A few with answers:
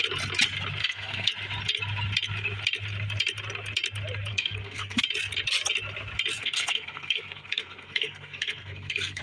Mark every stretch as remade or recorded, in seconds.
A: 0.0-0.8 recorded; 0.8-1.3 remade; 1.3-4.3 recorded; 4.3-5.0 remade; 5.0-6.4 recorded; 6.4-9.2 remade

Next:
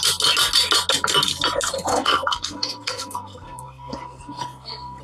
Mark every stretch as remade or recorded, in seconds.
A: 0.0-1.9 recorded; 1.9-5.0 remade